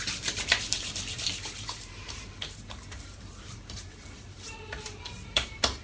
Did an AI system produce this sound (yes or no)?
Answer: yes